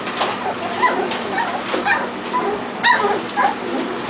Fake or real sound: real